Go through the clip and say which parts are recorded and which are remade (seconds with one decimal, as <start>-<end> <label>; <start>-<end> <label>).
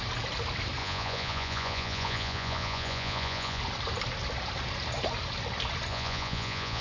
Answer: 0.0-0.8 recorded; 0.8-3.6 remade; 3.6-5.9 recorded; 5.9-6.8 remade